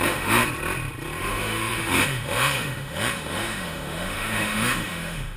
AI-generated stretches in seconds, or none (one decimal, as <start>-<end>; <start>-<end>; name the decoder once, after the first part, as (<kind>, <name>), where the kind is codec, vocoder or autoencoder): 0.0-0.4 (autoencoder, DAC-VAE); 1.2-5.4